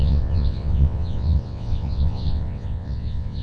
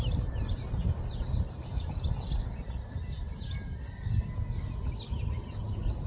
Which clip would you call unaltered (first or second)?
second